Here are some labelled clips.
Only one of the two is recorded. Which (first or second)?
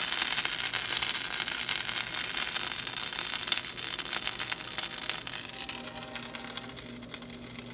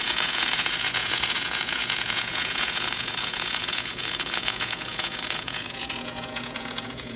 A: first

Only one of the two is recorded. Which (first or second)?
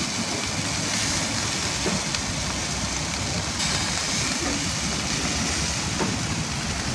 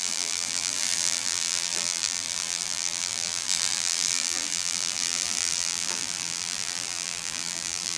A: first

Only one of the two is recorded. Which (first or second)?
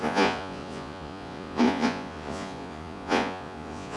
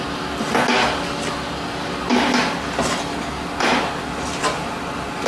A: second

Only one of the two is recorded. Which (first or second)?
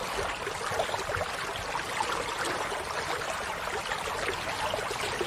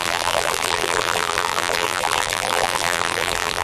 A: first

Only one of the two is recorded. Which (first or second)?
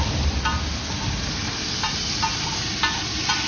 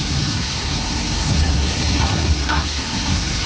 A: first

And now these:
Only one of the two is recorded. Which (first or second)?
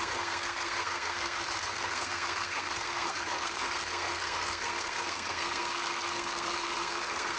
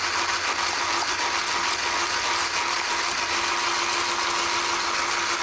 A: second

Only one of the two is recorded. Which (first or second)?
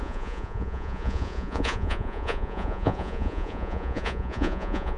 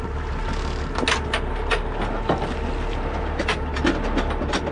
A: second